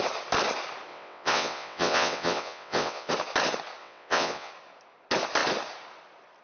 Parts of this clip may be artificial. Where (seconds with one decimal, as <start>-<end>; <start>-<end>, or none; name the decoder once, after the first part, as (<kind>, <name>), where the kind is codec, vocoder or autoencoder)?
0.9-3.1 (vocoder, WaveNeXt); 3.8-4.5